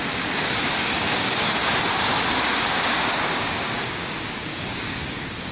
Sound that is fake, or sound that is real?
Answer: fake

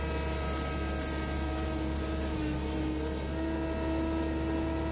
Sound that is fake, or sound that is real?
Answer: real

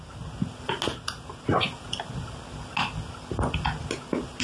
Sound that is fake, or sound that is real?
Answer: real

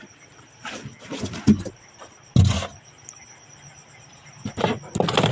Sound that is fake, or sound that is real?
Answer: real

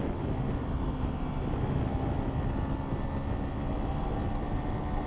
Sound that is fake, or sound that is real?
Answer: real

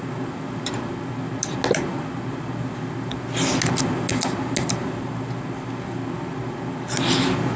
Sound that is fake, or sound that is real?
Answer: real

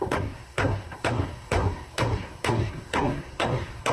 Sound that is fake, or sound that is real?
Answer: fake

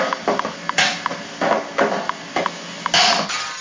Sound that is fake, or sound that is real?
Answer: real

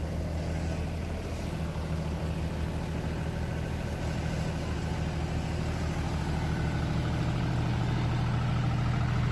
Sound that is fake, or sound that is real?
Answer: real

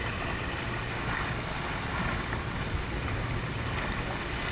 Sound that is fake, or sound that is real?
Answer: real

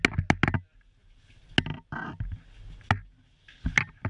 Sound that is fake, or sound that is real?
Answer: real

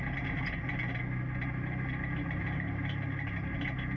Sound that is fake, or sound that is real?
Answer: real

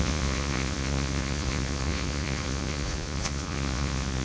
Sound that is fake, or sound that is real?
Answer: fake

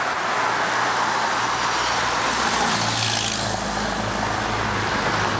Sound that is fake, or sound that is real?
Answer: real